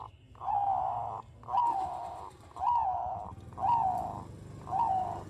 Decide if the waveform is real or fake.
real